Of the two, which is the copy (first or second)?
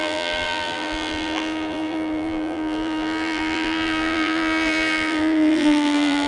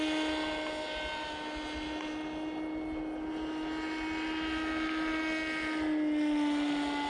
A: first